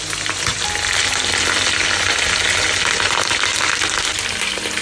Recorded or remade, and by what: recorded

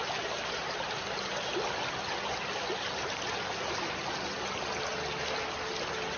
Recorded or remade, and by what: recorded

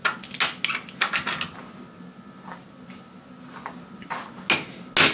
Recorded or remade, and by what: recorded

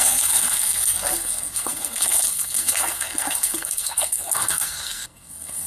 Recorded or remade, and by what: remade, codec, SNAC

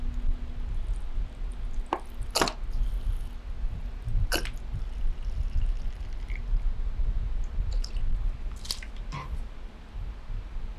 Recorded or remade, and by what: recorded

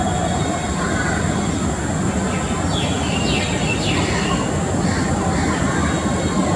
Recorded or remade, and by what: recorded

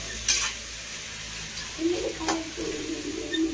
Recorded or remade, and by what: recorded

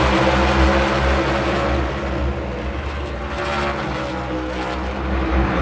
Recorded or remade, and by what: recorded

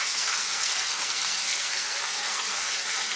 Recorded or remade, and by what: remade, codec, SNAC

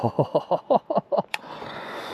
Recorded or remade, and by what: remade, vocoder, Vocos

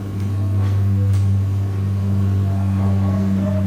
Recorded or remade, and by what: remade, codec, SNAC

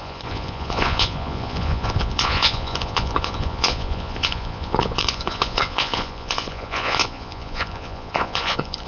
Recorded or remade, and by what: remade, vocoder, Vocos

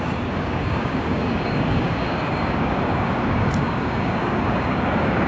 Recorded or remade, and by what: remade, codec, DAC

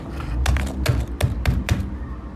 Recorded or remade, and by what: recorded